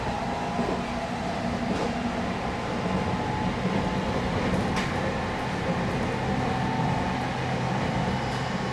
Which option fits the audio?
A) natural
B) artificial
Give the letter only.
A